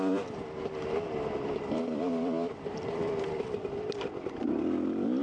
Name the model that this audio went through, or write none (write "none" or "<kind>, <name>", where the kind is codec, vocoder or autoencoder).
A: vocoder, BigVGAN v2